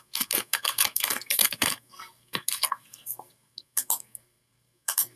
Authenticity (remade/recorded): remade